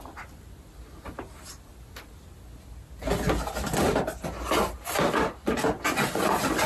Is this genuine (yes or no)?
yes